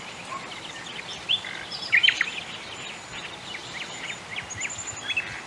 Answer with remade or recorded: recorded